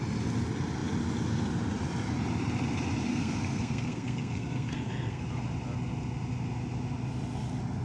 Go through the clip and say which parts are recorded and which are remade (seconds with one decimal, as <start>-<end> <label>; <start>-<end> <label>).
0.0-3.1 recorded; 3.1-5.2 remade; 5.2-7.8 recorded

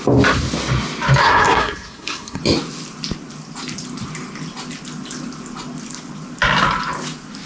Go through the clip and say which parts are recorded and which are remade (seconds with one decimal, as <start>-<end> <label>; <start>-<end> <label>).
0.0-1.2 recorded; 1.2-2.4 remade; 2.4-7.5 recorded

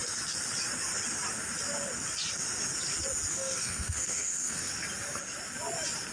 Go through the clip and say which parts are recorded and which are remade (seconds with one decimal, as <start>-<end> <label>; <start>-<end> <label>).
0.0-3.3 recorded; 3.3-4.7 remade; 4.7-6.1 recorded

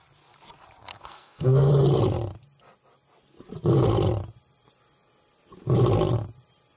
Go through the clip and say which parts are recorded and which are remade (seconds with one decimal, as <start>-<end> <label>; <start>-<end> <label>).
0.0-0.9 recorded; 0.9-1.7 remade; 1.7-6.8 recorded

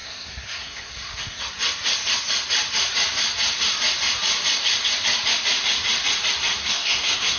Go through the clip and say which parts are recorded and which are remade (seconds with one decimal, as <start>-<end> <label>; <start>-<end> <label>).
0.0-1.4 remade; 1.4-6.6 recorded; 6.6-7.4 remade

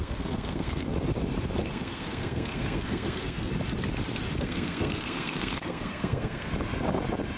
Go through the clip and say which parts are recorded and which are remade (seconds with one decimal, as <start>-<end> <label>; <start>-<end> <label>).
0.0-0.9 remade; 0.9-1.6 recorded; 1.6-3.5 remade; 3.5-4.4 recorded; 4.4-6.5 remade; 6.5-7.4 recorded